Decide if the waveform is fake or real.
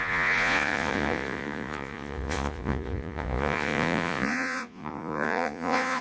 fake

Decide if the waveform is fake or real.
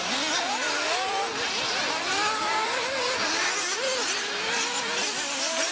real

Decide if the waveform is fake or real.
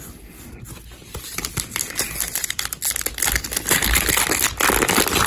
real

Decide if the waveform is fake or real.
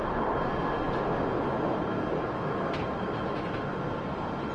real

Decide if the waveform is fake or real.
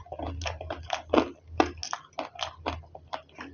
real